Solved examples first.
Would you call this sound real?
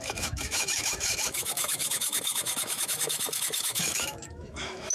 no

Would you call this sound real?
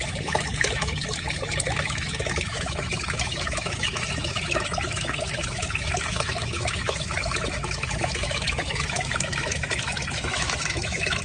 no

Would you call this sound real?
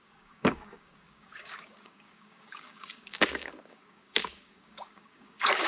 no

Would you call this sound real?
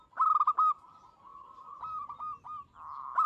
yes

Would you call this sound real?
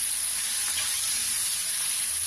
yes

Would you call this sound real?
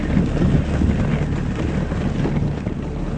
yes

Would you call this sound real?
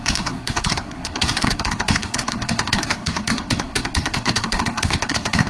no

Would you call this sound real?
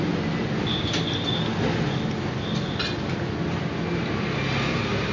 yes